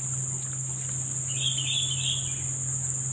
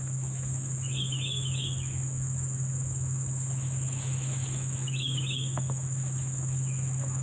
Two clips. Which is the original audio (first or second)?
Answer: first